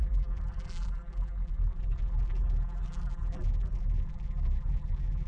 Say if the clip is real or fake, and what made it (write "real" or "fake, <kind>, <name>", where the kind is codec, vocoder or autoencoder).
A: fake, vocoder, BigVGAN v2